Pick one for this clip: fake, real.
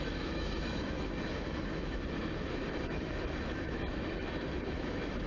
fake